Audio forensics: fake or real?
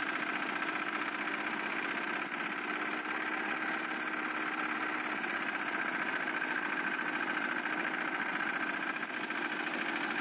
real